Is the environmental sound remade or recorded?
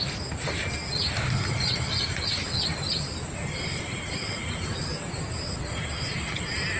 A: recorded